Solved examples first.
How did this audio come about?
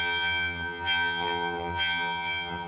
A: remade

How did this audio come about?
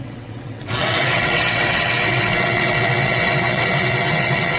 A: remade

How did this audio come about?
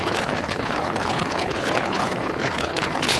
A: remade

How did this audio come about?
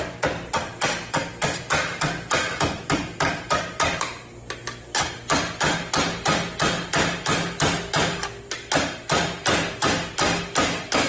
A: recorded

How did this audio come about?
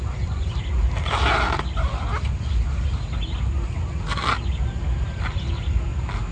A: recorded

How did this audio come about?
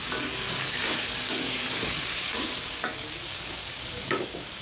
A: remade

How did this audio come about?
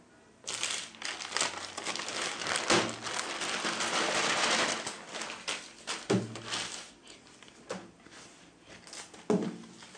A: recorded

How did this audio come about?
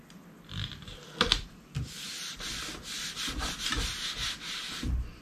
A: recorded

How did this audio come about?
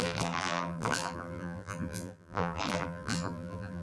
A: remade